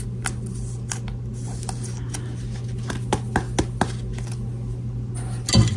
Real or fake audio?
real